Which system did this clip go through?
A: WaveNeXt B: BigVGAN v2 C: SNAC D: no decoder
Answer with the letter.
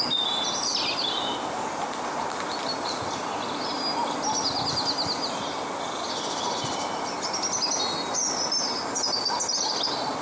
D